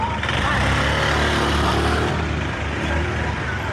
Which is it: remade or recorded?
recorded